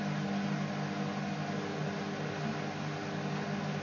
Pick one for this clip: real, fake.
real